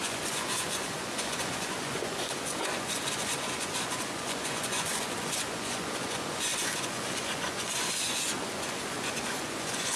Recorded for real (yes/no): no